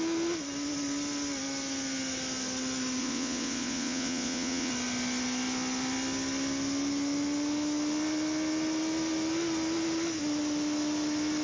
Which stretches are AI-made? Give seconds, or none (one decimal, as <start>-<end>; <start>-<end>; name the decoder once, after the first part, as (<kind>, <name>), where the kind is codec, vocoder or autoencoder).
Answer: 3.0-4.7 (vocoder, Vocos)